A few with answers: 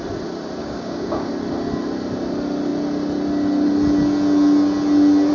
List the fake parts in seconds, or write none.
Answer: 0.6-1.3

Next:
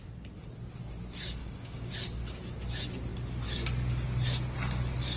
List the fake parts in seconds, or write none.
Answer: 1.4-1.9